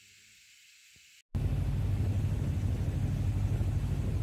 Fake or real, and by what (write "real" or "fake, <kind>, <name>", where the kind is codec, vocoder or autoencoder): real